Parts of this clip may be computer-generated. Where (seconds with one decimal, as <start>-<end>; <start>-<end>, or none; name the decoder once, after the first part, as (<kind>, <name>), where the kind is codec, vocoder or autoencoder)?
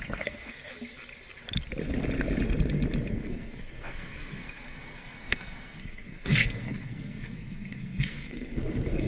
0.0-0.7 (codec, SNAC); 3.1-9.1